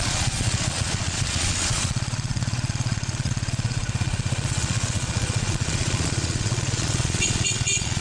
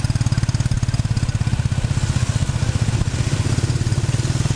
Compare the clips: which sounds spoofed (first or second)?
first